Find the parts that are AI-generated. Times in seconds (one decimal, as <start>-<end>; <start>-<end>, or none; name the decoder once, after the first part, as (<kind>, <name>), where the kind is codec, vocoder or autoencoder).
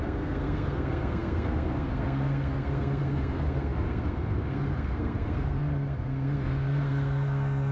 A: 0.0-7.7 (codec, SNAC)